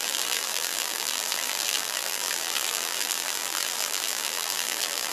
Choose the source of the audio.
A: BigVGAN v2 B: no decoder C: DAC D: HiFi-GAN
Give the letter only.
A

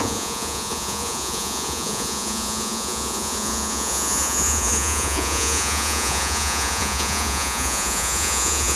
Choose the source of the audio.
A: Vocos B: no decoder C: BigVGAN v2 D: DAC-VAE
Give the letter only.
A